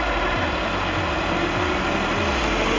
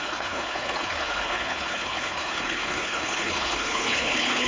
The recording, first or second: first